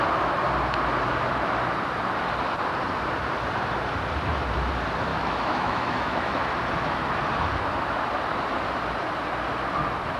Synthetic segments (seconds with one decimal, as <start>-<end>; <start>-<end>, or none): 5.1-6.4